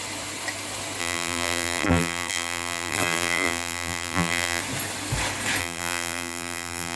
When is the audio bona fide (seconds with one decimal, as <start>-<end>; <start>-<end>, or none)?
0.0-1.0; 4.6-5.6